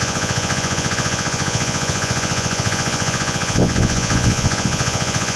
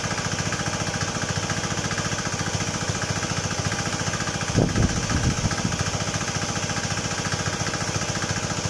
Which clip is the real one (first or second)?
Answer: second